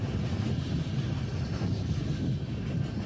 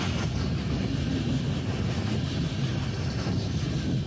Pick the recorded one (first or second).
second